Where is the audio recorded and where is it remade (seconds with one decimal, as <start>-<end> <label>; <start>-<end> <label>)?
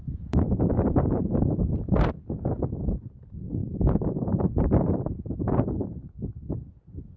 0.0-2.1 remade; 2.1-3.6 recorded; 3.6-4.9 remade; 4.9-5.5 recorded; 5.5-6.3 remade; 6.3-7.2 recorded